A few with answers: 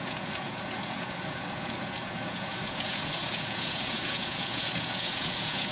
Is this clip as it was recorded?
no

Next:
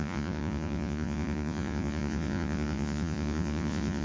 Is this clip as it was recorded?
no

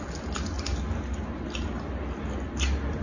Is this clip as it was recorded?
yes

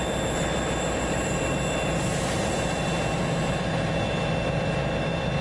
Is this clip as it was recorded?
yes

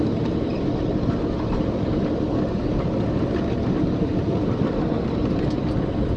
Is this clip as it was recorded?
yes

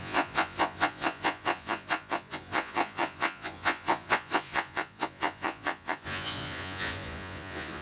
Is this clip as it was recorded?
no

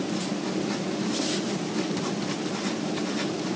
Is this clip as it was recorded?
yes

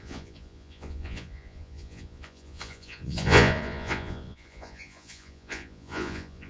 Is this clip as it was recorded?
no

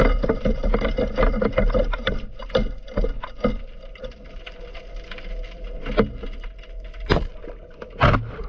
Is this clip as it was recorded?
yes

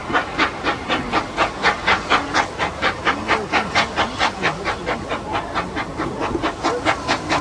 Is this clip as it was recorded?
yes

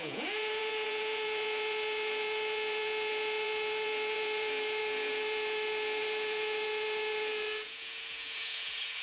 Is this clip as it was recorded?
no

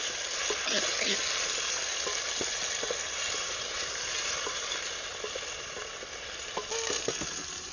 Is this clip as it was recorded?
yes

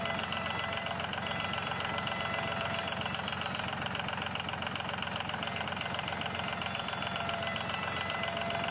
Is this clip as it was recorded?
yes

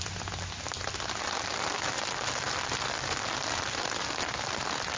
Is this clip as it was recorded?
yes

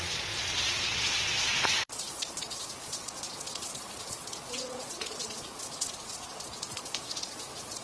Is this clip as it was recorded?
no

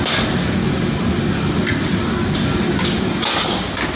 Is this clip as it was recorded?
yes